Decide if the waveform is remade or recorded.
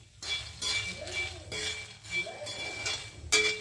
recorded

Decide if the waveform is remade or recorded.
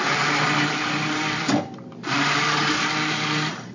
remade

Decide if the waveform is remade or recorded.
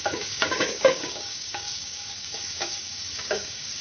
remade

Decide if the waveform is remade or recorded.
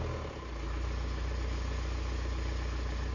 recorded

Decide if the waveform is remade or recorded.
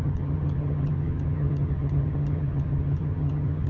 remade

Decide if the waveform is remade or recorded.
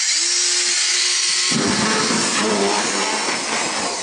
recorded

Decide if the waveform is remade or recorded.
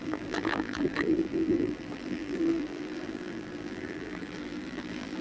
remade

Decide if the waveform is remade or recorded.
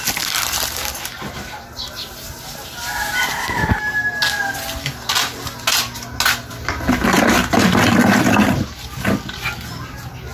recorded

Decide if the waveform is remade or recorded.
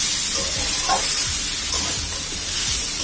recorded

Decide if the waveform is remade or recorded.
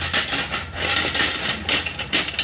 recorded